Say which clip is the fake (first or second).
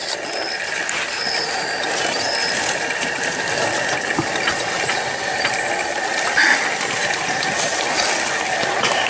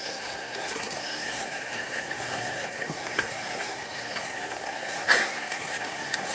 second